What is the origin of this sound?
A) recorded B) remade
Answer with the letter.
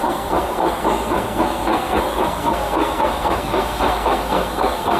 B